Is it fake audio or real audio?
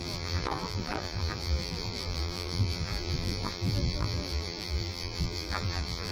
fake